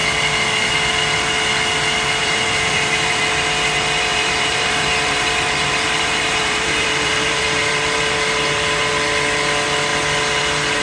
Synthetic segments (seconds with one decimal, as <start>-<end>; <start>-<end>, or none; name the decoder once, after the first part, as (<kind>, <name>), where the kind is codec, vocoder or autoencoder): 2.2-3.2 (vocoder, BigVGAN v2); 4.1-8.9